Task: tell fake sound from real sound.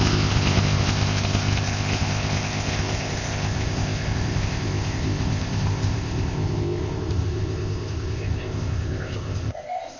fake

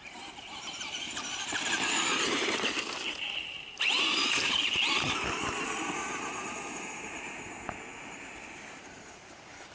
fake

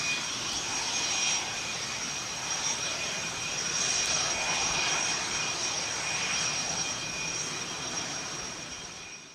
real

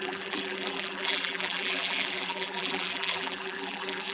fake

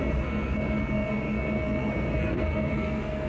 fake